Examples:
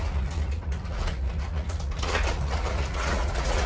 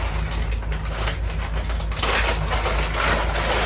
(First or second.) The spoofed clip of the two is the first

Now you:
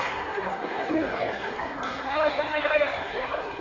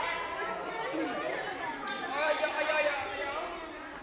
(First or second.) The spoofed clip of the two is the first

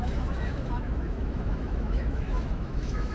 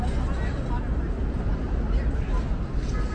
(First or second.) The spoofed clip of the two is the first